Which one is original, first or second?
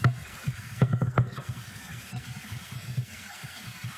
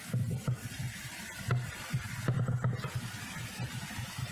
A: second